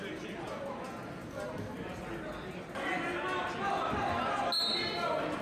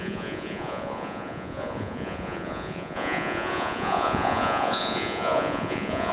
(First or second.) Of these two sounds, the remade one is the second